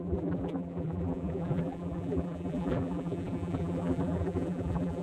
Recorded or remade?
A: remade